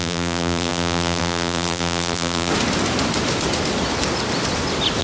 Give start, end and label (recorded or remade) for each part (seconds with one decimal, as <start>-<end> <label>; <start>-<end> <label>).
0.0-2.5 remade; 2.5-5.0 recorded